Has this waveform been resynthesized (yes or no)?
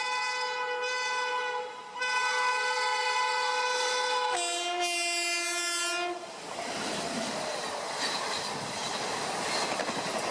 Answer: no